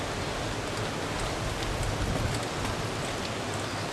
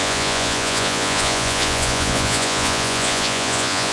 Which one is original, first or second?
first